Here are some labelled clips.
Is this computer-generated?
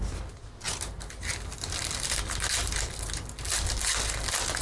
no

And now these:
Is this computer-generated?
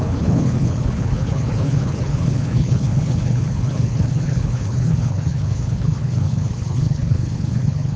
yes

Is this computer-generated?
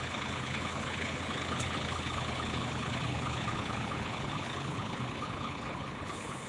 yes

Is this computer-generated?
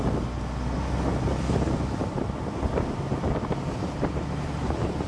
no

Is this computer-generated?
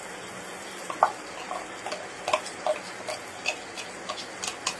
no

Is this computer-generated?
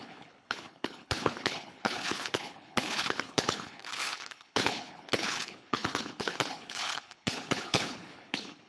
yes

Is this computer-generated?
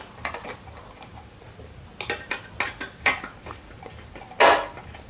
no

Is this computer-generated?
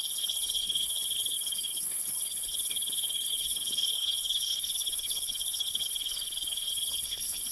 yes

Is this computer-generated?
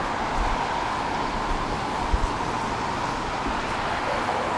no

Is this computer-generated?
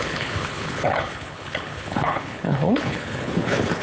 yes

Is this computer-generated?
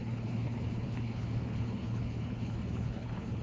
yes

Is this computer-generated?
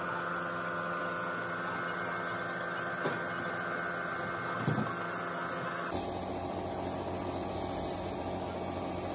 no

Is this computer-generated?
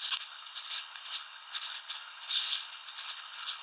yes